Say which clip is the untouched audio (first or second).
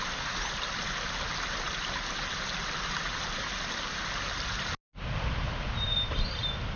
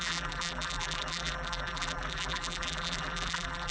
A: first